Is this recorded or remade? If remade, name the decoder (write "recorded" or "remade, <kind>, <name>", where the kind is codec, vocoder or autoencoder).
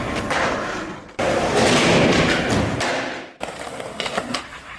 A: recorded